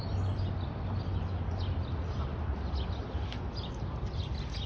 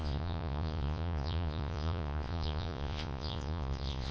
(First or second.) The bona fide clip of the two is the first